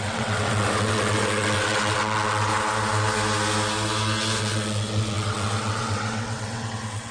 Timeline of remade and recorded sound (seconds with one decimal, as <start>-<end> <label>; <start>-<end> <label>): 0.0-2.5 remade; 2.5-4.4 recorded; 4.4-7.1 remade